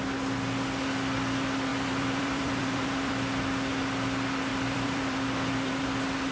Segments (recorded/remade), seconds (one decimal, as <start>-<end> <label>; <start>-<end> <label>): 0.0-1.7 recorded; 1.7-3.1 remade; 3.1-4.5 recorded; 4.5-5.7 remade; 5.7-6.3 recorded